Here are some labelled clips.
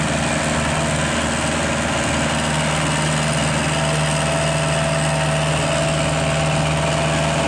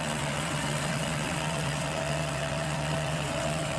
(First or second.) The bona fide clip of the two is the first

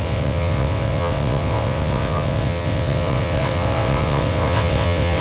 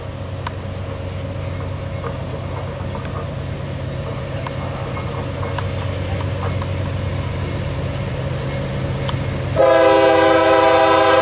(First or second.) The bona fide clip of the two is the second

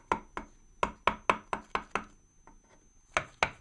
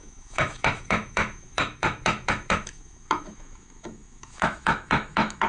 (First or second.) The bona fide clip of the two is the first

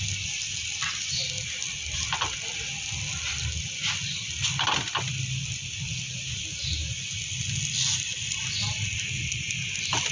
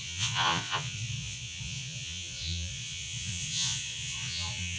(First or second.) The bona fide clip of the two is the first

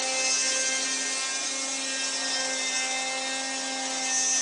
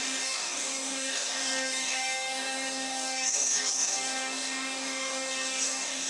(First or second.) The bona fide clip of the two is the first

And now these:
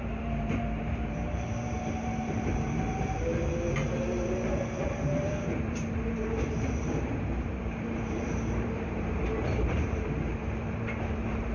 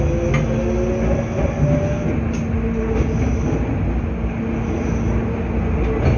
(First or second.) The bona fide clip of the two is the second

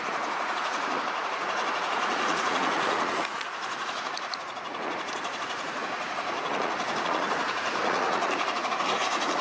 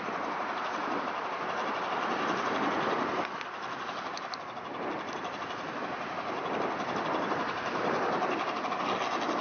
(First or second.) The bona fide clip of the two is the second